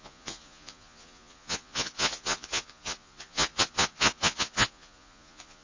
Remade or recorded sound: remade